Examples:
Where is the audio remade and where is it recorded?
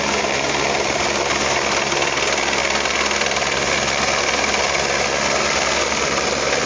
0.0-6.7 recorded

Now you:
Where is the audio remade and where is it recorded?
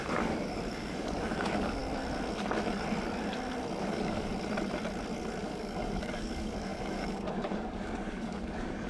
0.0-1.8 remade; 1.8-3.8 recorded; 3.8-4.3 remade; 4.3-5.4 recorded; 5.4-8.9 remade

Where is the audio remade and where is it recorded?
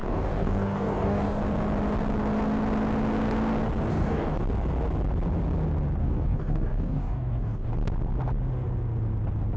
0.0-1.4 remade; 1.4-3.9 recorded; 3.9-4.4 remade; 4.4-6.0 recorded; 6.0-7.7 remade; 7.7-9.6 recorded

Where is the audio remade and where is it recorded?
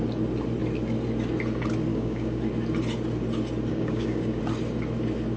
0.0-1.9 recorded; 1.9-2.4 remade; 2.4-3.7 recorded; 3.7-4.4 remade; 4.4-5.4 recorded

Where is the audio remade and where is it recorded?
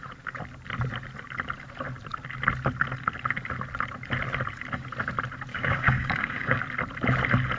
0.0-5.5 recorded; 5.5-6.6 remade; 6.6-7.6 recorded